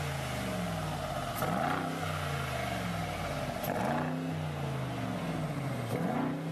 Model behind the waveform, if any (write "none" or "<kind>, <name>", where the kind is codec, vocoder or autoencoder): none